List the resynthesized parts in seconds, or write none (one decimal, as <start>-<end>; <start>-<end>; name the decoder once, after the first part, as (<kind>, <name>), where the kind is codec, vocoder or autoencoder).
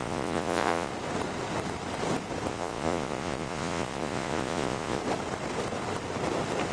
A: 0.0-0.9 (vocoder, Vocos); 2.5-5.0